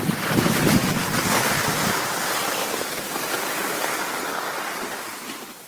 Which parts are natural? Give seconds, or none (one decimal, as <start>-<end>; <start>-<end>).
0.0-5.7

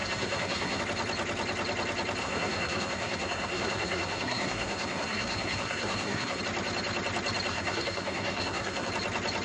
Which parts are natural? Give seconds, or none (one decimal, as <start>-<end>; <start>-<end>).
0.8-2.2; 6.4-7.5; 8.9-9.4

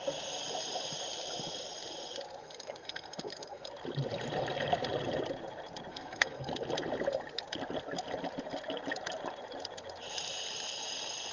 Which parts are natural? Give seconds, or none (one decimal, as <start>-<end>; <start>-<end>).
0.0-2.4; 3.7-5.9; 6.5-11.3

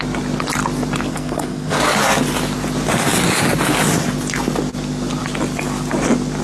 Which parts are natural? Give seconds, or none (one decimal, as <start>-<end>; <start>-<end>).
0.0-1.1; 1.8-6.4